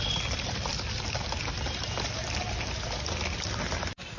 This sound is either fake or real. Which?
real